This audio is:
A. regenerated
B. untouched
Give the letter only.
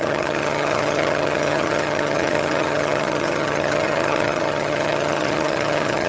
A